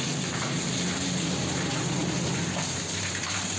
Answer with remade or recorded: remade